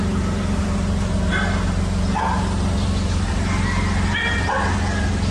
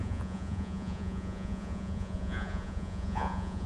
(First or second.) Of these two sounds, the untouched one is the first